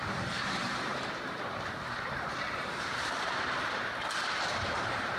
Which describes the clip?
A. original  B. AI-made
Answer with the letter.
B